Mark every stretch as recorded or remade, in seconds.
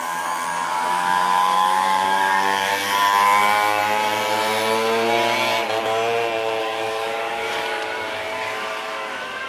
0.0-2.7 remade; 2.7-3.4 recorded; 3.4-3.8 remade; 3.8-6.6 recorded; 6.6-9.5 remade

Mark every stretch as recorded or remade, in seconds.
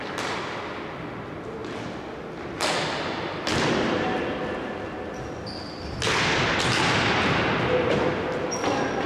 0.0-9.1 recorded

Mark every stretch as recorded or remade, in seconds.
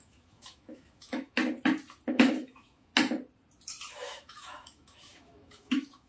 0.0-1.4 remade; 1.4-2.1 recorded; 2.1-2.9 remade; 2.9-3.9 recorded; 3.9-6.1 remade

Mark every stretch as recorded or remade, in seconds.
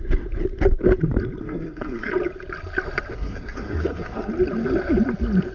0.0-1.4 recorded; 1.4-2.1 remade; 2.1-3.1 recorded; 3.1-4.3 remade; 4.3-5.5 recorded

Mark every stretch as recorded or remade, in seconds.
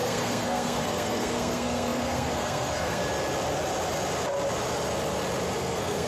0.0-3.0 remade; 3.0-5.6 recorded; 5.6-6.1 remade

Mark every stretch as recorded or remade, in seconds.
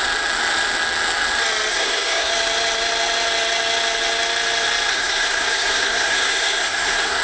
0.0-1.7 recorded; 1.7-2.3 remade; 2.3-4.9 recorded; 4.9-7.2 remade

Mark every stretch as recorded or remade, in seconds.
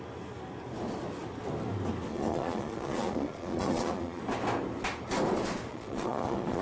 0.0-2.1 recorded; 2.1-4.2 remade; 4.2-5.7 recorded; 5.7-6.6 remade